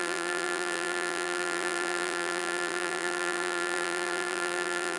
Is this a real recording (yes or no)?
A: no